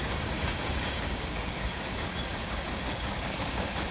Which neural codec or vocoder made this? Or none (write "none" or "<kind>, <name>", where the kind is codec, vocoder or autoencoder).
codec, DAC